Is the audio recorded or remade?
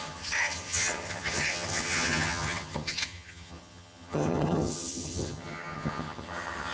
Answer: remade